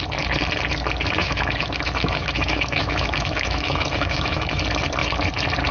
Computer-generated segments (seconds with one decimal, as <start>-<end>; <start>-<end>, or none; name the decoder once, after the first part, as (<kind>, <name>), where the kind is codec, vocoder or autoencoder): 1.2-4.6 (autoencoder, DAC-VAE)